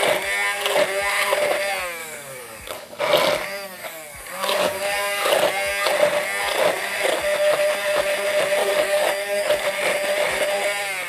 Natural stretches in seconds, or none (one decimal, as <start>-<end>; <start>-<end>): 0.0-2.0; 3.0-3.8; 5.3-8.6; 9.5-11.1